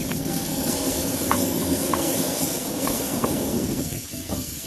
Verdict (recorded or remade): remade